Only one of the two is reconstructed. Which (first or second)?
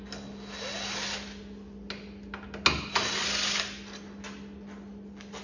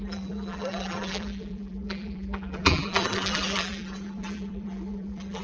second